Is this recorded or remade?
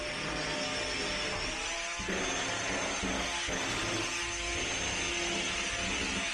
recorded